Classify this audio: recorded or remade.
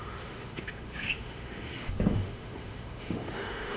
remade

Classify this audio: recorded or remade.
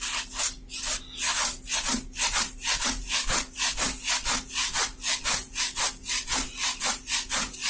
recorded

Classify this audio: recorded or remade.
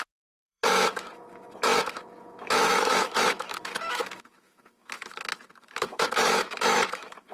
remade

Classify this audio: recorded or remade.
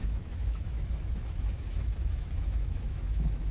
remade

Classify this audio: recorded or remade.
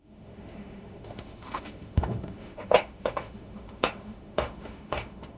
remade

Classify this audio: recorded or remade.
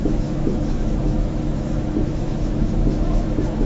remade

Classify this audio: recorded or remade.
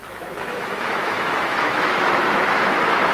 remade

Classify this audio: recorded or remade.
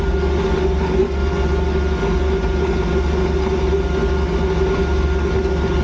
recorded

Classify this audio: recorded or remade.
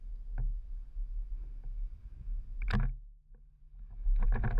recorded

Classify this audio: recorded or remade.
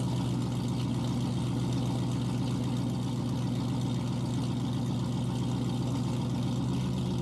recorded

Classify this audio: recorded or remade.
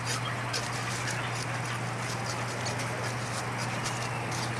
recorded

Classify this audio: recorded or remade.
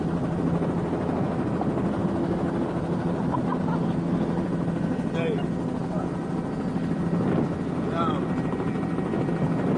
recorded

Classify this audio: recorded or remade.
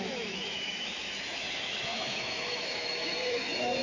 remade